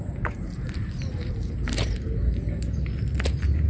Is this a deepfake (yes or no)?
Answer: yes